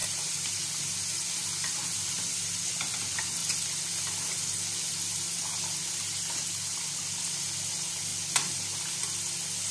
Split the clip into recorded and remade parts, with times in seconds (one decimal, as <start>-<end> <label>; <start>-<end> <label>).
0.0-9.7 recorded